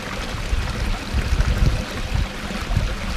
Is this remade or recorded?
recorded